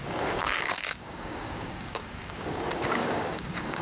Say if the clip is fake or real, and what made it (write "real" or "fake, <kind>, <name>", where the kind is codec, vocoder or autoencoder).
fake, codec, DAC